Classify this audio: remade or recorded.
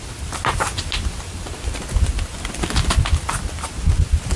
recorded